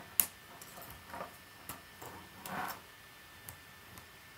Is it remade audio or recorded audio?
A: recorded